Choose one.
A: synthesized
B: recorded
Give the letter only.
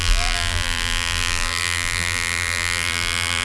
A